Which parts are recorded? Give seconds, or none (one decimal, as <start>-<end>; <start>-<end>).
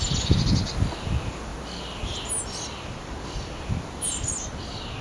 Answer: 0.0-5.0